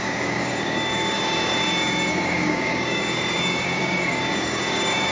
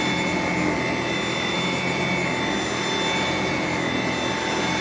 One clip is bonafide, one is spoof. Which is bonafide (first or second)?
second